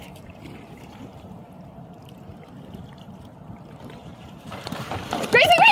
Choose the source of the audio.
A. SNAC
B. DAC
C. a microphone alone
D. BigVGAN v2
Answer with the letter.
D